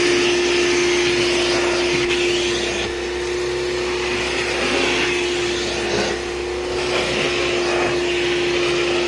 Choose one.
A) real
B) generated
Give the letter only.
A